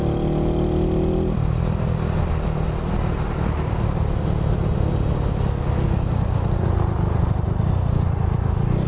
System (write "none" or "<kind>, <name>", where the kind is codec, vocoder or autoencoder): none